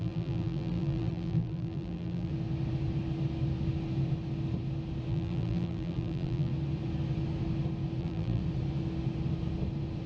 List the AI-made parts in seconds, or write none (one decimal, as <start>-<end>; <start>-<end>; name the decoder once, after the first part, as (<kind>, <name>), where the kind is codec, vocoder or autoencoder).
0.0-2.3 (vocoder, BigVGAN v2); 5.1-6.5; 8.0-8.4